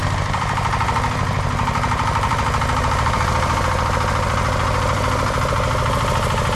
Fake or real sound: fake